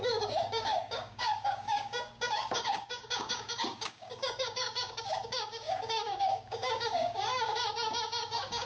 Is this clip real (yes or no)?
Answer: no